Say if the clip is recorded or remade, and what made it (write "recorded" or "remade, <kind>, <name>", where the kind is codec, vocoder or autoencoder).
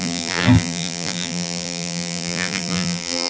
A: remade, vocoder, BigVGAN v2